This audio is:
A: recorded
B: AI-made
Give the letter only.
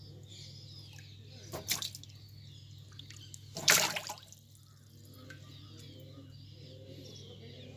A